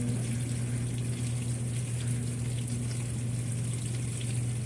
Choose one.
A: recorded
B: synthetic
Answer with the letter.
A